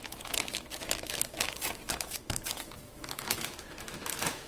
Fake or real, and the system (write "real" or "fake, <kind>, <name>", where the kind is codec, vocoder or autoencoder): fake, autoencoder, DAC-VAE